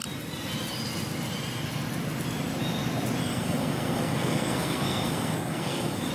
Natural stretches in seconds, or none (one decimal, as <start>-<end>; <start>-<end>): 0.0-3.2

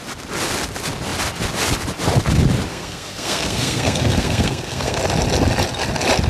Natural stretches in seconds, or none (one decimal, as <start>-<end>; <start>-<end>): 0.0-2.7; 5.0-6.3